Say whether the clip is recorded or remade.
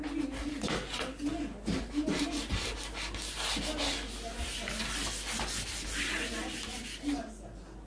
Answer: recorded